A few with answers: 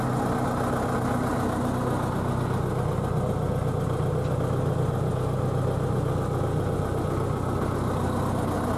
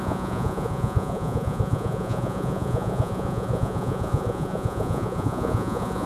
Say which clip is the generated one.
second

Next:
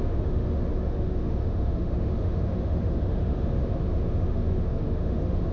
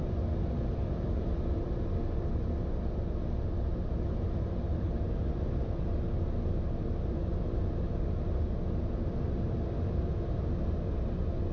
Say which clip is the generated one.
first